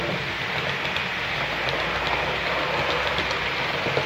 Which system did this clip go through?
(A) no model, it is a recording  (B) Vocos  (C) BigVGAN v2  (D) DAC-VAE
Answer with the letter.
A